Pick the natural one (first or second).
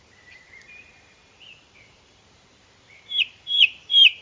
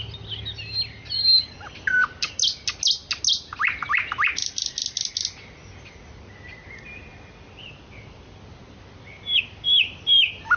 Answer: second